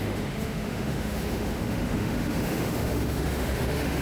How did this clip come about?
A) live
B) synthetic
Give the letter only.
B